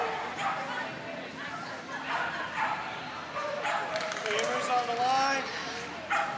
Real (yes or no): yes